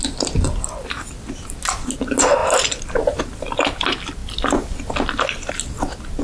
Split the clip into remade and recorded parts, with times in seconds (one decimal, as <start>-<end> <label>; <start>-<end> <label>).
0.0-6.2 recorded